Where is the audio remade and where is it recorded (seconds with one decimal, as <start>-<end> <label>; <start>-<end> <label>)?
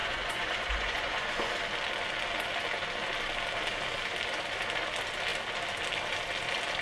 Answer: 0.0-1.5 remade; 1.5-6.8 recorded